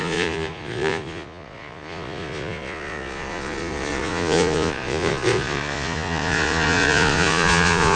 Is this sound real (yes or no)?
no